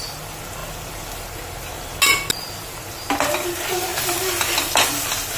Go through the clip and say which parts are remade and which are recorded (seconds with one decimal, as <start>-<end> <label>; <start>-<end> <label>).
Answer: 0.0-5.4 recorded